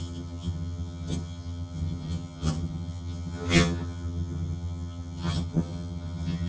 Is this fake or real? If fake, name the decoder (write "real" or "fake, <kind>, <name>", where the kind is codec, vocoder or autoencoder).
fake, vocoder, HiFi-GAN